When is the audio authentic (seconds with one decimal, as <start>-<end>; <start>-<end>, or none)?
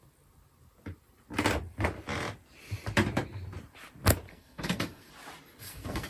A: 0.0-4.3; 5.1-5.6